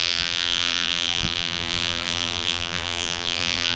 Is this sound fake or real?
fake